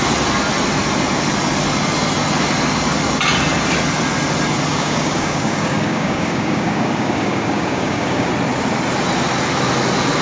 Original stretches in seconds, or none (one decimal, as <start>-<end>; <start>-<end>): 0.0-4.7; 8.3-10.2